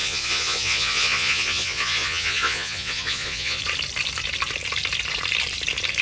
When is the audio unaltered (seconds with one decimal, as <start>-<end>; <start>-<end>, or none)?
3.6-6.0